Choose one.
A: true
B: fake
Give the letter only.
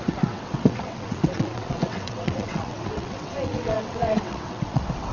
B